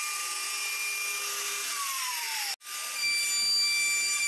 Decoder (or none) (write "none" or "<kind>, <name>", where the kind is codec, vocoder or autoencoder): none